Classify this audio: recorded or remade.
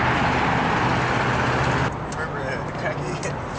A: recorded